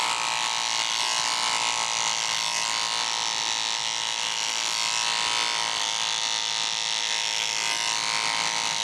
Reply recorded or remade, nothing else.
recorded